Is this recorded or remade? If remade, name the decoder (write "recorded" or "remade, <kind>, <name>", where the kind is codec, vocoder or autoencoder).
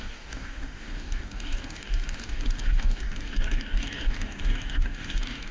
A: remade, codec, DAC